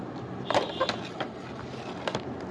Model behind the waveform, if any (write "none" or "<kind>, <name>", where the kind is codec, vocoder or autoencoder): none